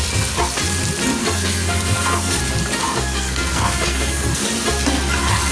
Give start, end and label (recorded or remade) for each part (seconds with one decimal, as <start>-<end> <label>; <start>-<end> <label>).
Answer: 0.0-1.2 recorded; 1.2-2.4 remade; 2.4-2.8 recorded; 2.8-4.5 remade; 4.5-5.5 recorded